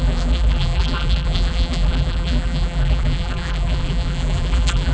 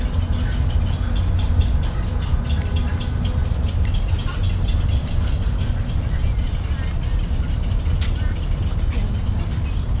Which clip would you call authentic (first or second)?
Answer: second